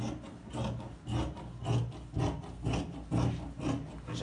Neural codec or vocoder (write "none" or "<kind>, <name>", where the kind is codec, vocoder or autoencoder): none